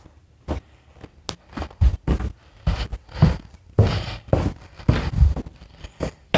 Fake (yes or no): no